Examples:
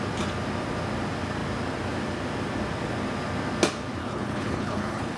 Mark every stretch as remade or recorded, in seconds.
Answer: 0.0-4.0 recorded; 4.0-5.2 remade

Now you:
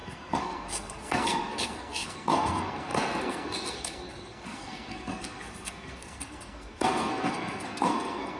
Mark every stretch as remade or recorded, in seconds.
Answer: 0.0-8.4 remade

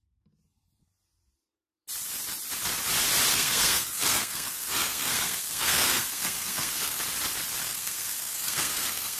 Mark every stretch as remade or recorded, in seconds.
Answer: 0.0-3.3 recorded; 3.3-7.0 remade; 7.0-7.6 recorded; 7.6-9.2 remade

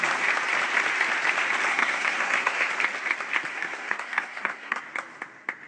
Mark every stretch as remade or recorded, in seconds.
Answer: 0.0-1.7 recorded; 1.7-2.7 remade; 2.7-3.5 recorded; 3.5-4.8 remade; 4.8-5.7 recorded

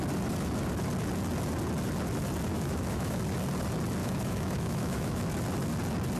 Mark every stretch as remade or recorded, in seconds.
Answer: 0.0-2.5 recorded; 2.5-3.2 remade; 3.2-4.0 recorded; 4.0-5.3 remade; 5.3-6.2 recorded

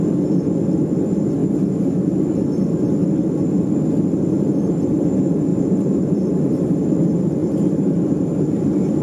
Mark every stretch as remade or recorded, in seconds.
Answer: 0.0-5.5 recorded; 5.5-6.7 remade; 6.7-7.4 recorded; 7.4-8.4 remade; 8.4-9.0 recorded

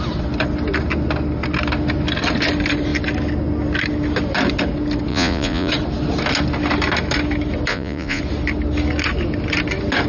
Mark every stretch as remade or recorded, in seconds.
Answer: 0.0-5.1 recorded; 5.1-5.7 remade; 5.7-7.7 recorded; 7.7-8.2 remade; 8.2-10.1 recorded

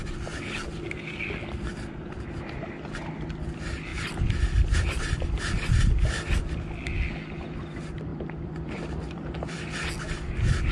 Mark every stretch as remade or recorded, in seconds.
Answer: 0.0-1.7 recorded; 1.7-2.6 remade; 2.6-3.9 recorded; 3.9-6.4 remade; 6.4-8.1 recorded; 8.1-9.6 remade; 9.6-10.7 recorded